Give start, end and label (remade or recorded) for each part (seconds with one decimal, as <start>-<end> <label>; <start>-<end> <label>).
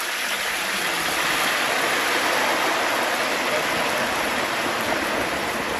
0.0-0.8 remade; 0.8-4.0 recorded; 4.0-5.8 remade